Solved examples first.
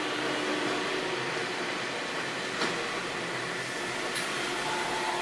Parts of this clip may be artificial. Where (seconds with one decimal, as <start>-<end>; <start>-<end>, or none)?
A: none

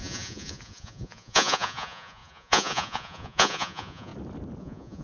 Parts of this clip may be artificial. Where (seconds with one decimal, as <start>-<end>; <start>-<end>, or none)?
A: 0.0-4.1; 4.6-5.0

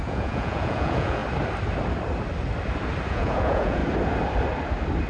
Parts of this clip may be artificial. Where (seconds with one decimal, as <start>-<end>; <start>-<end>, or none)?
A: 0.0-1.2; 3.1-3.8

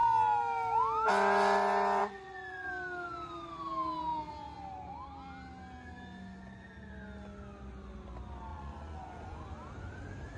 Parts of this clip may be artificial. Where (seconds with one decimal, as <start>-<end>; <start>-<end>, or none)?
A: 2.0-2.7; 8.5-9.4

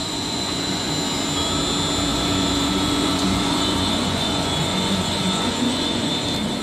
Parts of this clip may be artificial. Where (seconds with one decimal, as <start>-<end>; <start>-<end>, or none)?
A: 0.0-0.9; 2.1-6.1